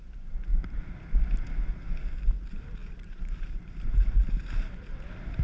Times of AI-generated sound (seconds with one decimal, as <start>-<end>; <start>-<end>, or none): 2.8-4.1